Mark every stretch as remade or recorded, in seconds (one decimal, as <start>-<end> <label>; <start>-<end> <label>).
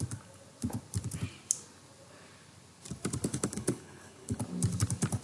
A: 0.0-3.3 recorded; 3.3-4.4 remade; 4.4-5.2 recorded